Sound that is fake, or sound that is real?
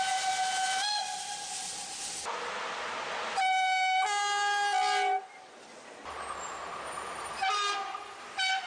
real